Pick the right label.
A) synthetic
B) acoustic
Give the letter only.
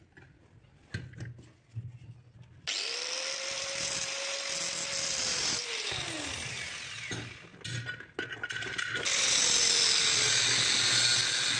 B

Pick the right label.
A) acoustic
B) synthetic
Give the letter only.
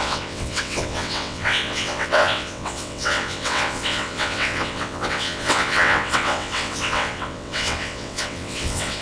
B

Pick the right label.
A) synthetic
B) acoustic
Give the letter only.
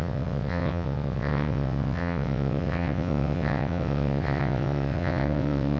A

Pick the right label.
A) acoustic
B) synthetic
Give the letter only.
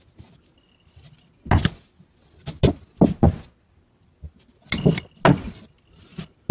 A